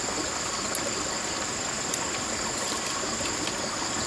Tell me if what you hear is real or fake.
real